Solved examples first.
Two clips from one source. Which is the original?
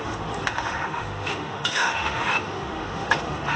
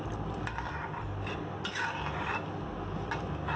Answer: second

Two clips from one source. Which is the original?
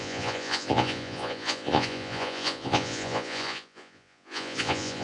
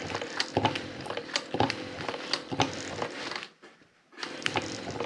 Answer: second